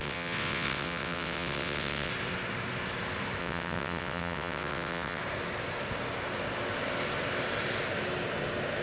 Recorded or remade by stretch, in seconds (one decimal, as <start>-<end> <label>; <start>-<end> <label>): 0.0-2.1 remade; 2.1-3.4 recorded; 3.4-5.2 remade; 5.2-8.8 recorded